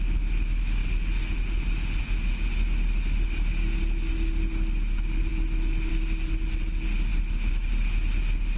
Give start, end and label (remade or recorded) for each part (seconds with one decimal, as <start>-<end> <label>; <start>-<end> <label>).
0.0-8.6 recorded